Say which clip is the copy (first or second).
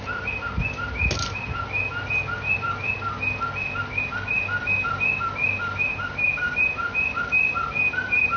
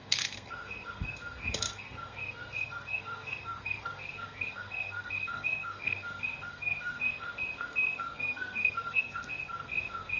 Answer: second